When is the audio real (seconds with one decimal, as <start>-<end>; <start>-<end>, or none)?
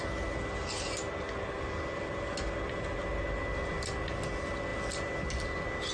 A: 0.0-5.9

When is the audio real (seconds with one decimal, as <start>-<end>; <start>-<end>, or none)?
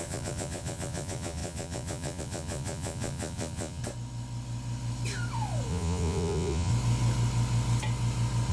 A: 3.8-5.7; 6.7-8.5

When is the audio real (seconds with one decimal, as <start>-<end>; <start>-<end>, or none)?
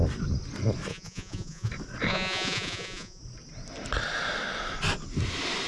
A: 0.0-0.9; 1.7-2.1; 3.2-5.7